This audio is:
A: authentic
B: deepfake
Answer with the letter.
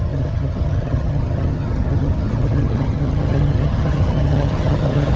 B